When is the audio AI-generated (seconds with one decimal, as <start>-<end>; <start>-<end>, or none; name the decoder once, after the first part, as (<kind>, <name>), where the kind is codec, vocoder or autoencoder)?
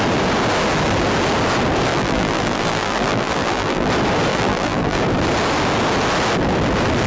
1.9-3.9 (vocoder, BigVGAN v2); 4.3-5.0